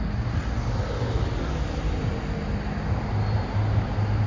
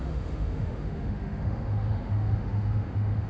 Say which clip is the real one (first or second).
first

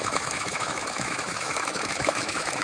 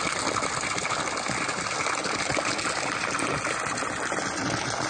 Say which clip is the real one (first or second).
second